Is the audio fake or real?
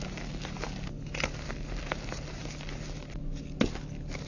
real